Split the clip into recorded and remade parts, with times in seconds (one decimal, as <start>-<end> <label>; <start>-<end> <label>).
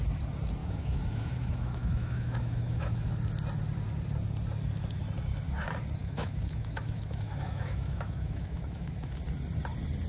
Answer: 0.0-0.6 recorded; 0.6-3.1 remade; 3.1-6.0 recorded; 6.0-9.2 remade; 9.2-10.1 recorded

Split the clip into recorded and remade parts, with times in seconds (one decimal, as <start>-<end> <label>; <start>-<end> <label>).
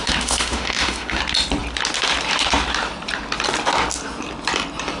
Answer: 0.0-1.2 remade; 1.2-5.0 recorded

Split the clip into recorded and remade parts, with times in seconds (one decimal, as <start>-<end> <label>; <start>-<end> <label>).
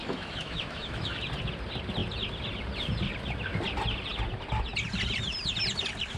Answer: 0.0-1.2 remade; 1.2-6.2 recorded